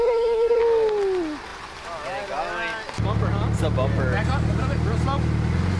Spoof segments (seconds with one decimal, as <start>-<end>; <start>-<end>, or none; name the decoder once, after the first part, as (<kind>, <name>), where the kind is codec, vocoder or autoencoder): 0.0-0.6 (codec, SNAC)

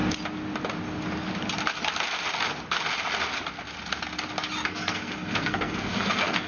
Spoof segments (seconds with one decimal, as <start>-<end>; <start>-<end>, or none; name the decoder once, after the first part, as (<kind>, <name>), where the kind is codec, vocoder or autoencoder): 4.7-6.5 (codec, SNAC)